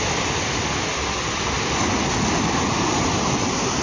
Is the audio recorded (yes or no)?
yes